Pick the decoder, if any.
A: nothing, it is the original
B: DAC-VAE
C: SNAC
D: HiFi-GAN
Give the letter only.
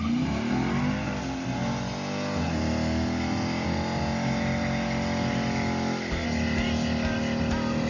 A